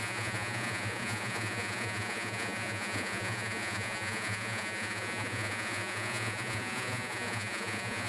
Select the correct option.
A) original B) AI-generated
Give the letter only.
B